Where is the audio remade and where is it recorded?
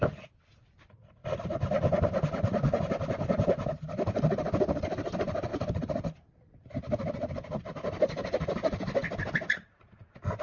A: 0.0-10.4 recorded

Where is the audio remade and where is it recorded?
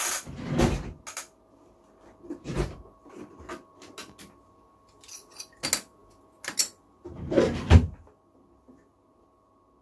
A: 0.0-2.5 recorded; 2.5-3.3 remade; 3.3-9.8 recorded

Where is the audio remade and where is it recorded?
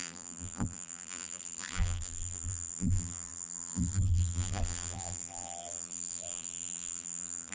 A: 0.0-7.5 remade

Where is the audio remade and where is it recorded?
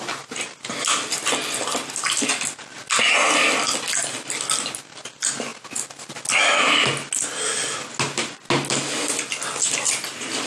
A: 0.0-10.5 recorded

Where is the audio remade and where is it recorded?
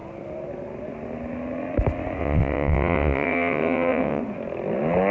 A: 0.0-2.2 recorded; 2.2-4.2 remade; 4.2-5.1 recorded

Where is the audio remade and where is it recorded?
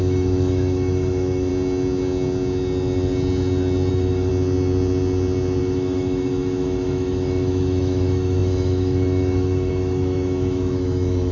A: 0.0-1.5 remade; 1.5-3.9 recorded; 3.9-4.3 remade; 4.3-5.6 recorded; 5.6-11.3 remade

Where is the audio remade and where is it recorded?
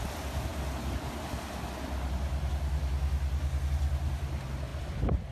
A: 0.0-5.3 recorded